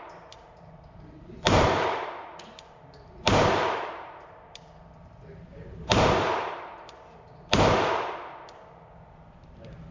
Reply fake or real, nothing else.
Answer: fake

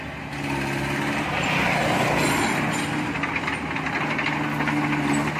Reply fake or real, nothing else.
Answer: real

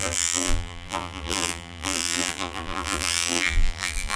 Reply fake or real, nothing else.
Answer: fake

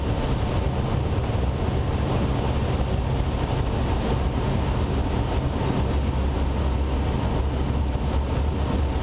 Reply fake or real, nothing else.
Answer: real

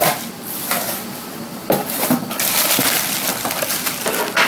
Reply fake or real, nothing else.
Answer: fake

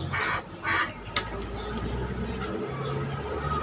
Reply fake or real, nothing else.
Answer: real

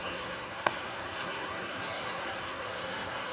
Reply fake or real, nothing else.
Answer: fake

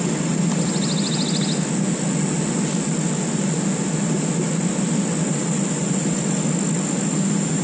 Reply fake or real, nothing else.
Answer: real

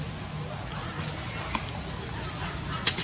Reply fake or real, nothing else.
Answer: real